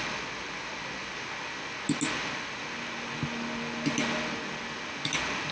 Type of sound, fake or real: real